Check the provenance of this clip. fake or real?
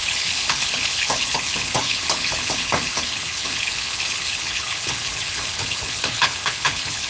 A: fake